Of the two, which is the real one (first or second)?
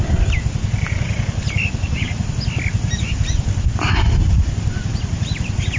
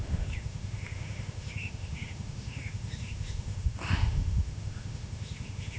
first